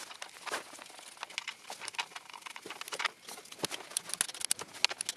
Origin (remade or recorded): recorded